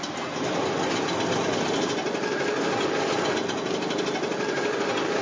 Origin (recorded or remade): recorded